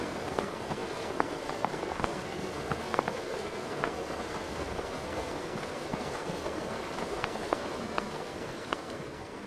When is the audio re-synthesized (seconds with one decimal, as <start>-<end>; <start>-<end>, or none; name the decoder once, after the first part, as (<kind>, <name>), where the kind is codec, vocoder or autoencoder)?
0.0-9.5 (codec, SNAC)